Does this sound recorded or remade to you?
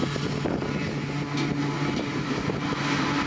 recorded